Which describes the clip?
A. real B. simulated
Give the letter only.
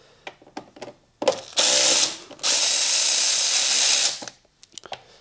A